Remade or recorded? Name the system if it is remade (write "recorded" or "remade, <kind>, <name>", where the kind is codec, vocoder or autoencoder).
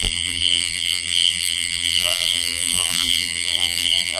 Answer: remade, vocoder, BigVGAN v2